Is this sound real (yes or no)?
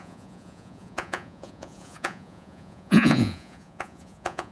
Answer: no